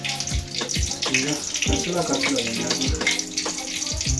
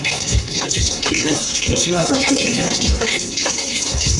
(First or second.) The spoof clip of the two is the second